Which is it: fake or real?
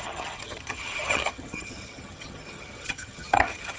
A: fake